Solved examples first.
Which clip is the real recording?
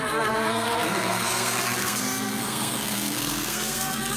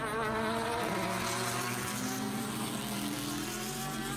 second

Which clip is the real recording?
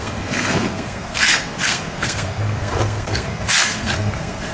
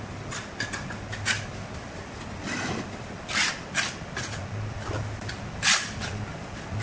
second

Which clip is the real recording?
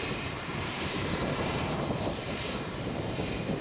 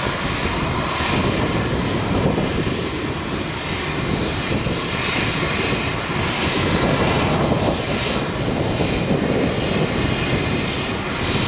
second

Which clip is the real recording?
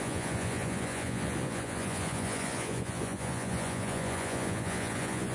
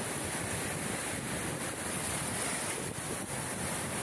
second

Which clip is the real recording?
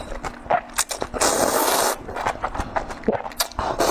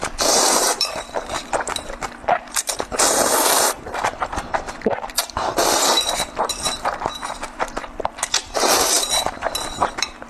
first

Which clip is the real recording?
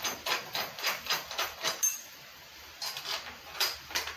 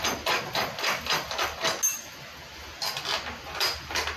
second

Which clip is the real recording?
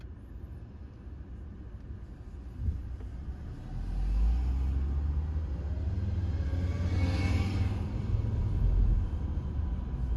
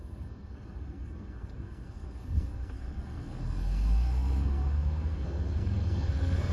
first